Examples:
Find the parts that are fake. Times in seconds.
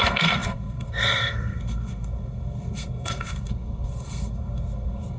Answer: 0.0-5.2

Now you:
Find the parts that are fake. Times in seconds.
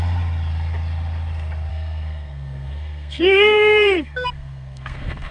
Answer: 1.7-5.3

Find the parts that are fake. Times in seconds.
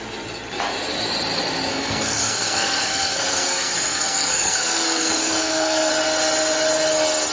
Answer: 1.7-5.9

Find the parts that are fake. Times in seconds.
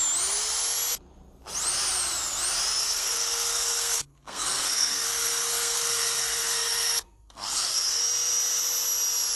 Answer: 2.8-8.0